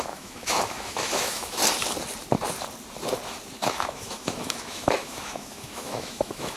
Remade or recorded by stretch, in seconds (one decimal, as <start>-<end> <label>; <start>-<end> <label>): 0.0-1.6 remade; 1.6-3.7 recorded; 3.7-6.6 remade